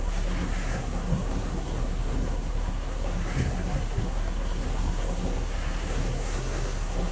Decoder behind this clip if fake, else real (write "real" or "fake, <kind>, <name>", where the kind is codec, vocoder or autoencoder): fake, codec, SNAC